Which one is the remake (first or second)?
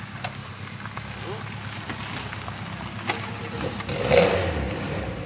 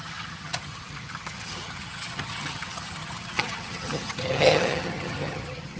second